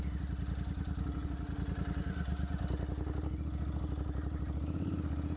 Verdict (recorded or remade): recorded